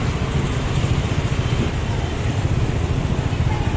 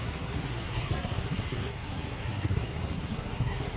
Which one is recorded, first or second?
first